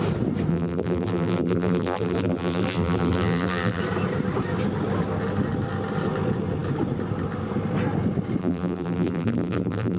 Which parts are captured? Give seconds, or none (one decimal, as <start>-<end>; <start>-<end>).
0.0-0.5; 3.8-8.4